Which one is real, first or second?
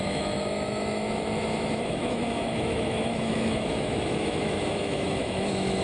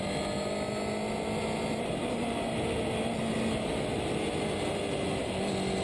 second